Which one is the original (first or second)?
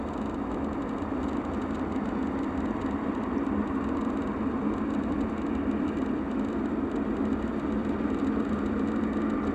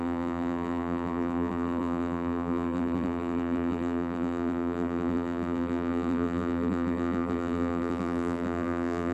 first